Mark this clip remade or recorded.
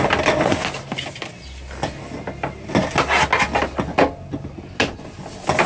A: recorded